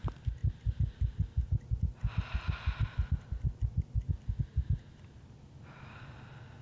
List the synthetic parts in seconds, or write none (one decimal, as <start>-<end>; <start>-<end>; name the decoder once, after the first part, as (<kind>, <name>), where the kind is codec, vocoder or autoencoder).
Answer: none